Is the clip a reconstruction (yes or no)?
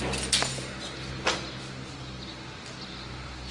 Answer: no